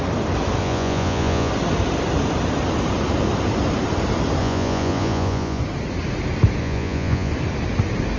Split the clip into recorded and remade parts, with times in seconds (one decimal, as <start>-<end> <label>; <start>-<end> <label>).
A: 0.0-0.6 recorded; 0.6-1.5 remade; 1.5-4.4 recorded; 4.4-5.6 remade; 5.6-6.6 recorded; 6.6-7.3 remade; 7.3-8.2 recorded